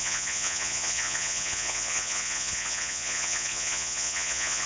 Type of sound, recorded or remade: remade